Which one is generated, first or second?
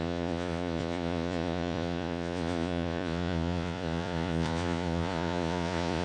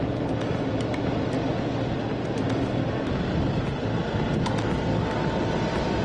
first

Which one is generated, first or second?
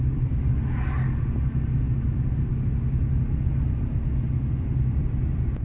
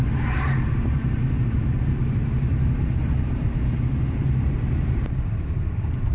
second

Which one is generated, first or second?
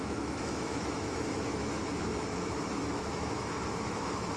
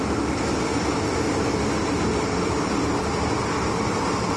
first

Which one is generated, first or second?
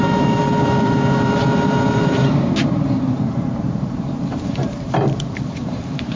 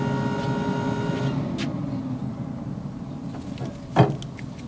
first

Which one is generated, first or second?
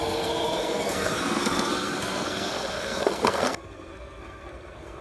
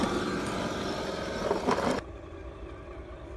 first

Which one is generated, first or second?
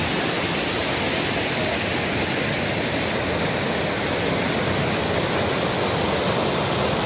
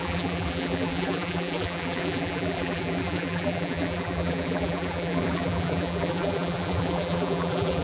second